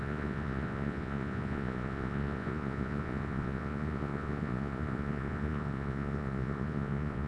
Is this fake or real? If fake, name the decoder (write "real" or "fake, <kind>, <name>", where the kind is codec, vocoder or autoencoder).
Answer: fake, vocoder, Vocos